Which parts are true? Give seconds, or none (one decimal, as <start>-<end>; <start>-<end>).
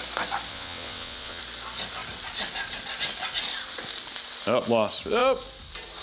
0.0-0.5; 1.4-6.0